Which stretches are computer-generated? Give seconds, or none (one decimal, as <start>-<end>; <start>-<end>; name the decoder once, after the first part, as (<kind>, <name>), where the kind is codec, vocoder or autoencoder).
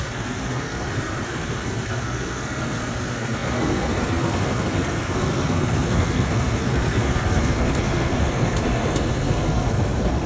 0.0-10.3 (codec, SNAC)